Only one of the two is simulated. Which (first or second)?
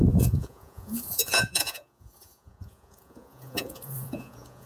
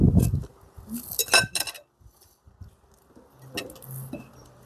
first